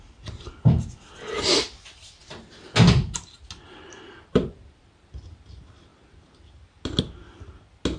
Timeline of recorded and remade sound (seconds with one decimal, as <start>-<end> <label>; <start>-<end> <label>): 0.0-8.0 recorded